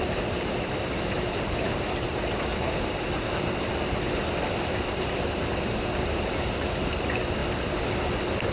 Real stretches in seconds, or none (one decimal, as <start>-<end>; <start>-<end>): 2.5-5.1; 7.4-8.5